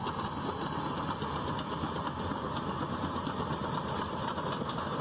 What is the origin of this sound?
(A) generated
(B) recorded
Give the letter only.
B